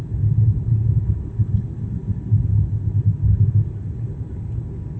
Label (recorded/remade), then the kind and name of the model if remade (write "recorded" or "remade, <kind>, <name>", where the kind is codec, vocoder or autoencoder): recorded